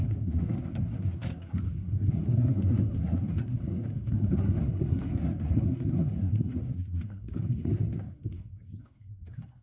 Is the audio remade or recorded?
remade